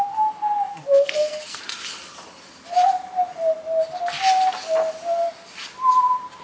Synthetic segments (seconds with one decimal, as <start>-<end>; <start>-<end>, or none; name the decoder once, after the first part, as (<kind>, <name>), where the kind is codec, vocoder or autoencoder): 0.7-1.6 (codec, SNAC)